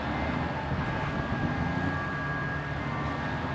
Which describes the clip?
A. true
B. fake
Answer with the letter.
A